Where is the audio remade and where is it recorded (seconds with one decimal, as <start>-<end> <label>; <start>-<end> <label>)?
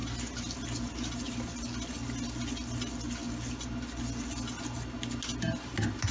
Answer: 0.0-6.1 recorded